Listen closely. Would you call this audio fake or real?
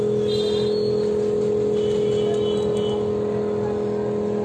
real